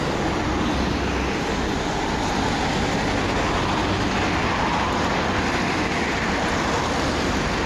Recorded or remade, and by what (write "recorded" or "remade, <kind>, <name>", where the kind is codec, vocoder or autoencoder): recorded